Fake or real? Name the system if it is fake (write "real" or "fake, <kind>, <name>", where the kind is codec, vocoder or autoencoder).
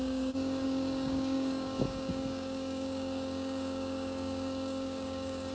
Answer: fake, codec, DAC